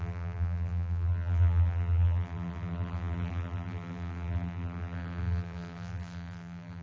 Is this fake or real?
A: fake